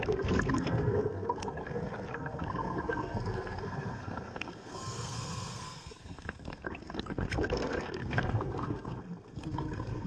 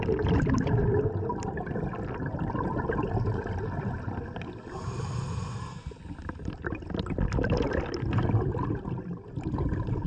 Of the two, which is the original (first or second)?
second